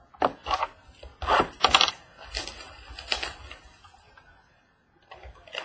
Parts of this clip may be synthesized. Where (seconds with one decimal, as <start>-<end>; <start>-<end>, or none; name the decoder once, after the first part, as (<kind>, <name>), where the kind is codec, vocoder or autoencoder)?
none